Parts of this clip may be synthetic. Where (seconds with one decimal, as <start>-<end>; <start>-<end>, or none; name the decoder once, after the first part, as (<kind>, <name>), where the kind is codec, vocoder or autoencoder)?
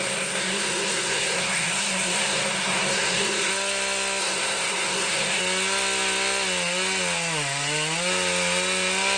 0.0-3.5 (codec, SNAC); 4.2-5.4